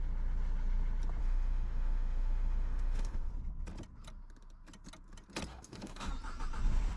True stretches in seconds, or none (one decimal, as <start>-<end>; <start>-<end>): 0.0-1.2; 3.3-5.5; 6.1-7.0